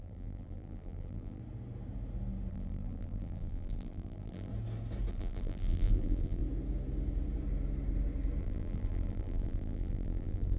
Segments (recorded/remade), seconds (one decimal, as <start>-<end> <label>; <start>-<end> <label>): 0.0-1.4 remade; 1.4-2.5 recorded; 2.5-4.5 remade; 4.5-5.1 recorded; 5.1-6.4 remade; 6.4-8.4 recorded; 8.4-10.6 remade